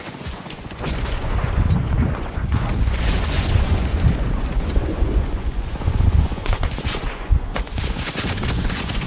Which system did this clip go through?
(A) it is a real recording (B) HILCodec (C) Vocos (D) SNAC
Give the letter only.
C